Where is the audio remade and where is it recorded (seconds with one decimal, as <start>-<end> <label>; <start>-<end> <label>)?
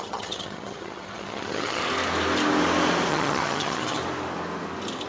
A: 0.0-1.8 remade; 1.8-3.1 recorded; 3.1-4.0 remade; 4.0-5.1 recorded